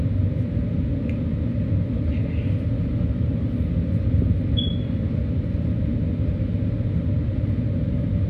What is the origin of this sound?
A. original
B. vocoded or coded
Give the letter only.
A